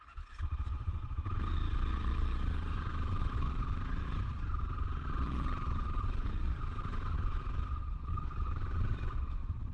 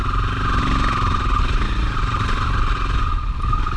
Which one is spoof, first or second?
first